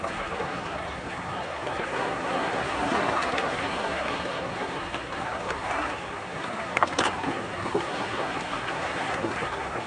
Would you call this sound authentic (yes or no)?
no